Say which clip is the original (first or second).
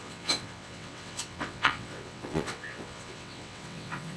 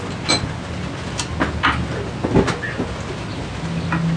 second